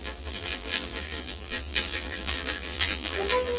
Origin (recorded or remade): remade